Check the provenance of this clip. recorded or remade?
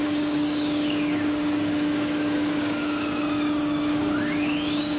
remade